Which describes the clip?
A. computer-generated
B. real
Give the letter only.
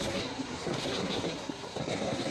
A